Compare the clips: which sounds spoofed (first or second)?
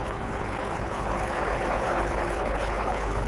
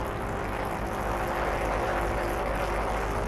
first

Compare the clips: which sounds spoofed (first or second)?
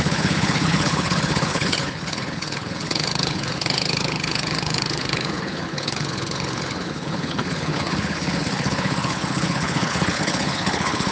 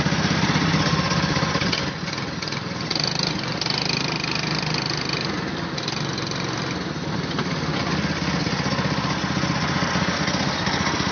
first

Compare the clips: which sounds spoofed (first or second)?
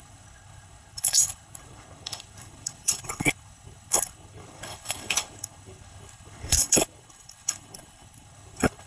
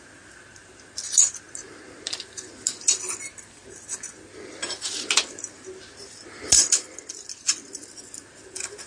first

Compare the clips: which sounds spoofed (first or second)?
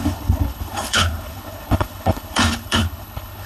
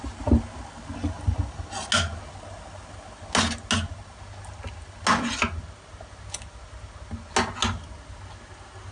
first